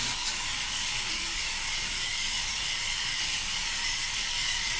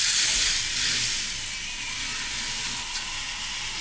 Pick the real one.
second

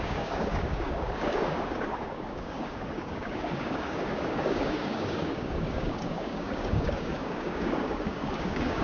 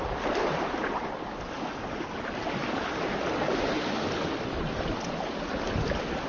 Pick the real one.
second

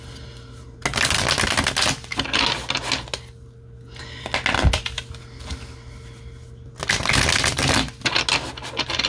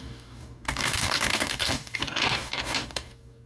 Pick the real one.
first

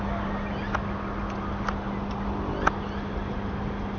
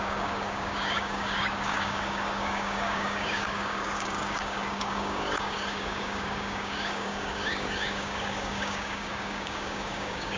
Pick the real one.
first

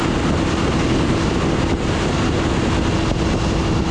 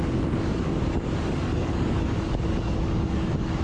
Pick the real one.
first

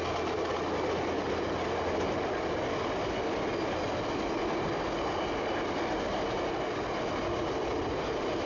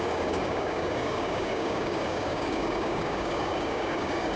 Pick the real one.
first